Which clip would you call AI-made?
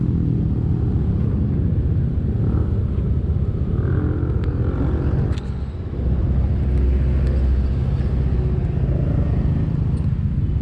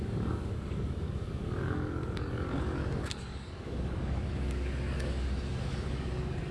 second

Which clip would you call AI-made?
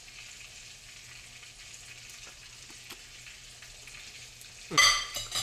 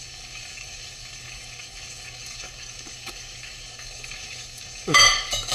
second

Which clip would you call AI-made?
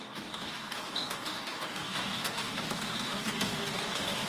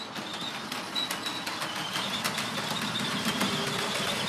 first